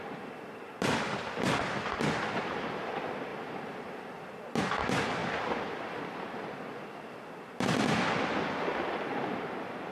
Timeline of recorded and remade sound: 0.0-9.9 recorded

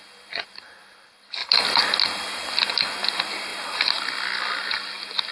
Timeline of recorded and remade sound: 0.0-5.3 recorded